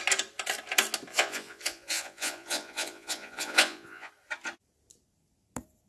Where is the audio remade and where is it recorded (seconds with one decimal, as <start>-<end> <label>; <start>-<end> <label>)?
0.0-1.1 recorded; 1.1-4.1 remade; 4.1-5.9 recorded